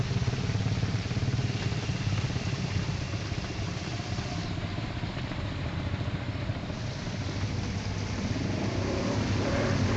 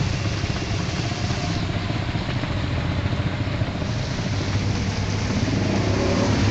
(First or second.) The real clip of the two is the second